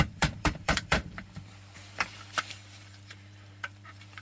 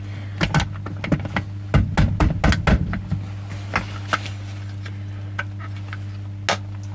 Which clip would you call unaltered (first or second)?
second